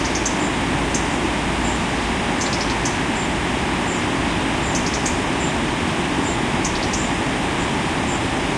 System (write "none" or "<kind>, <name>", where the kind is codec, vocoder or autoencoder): none